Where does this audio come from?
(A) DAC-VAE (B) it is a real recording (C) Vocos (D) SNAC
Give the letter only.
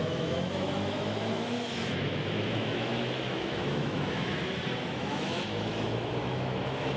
A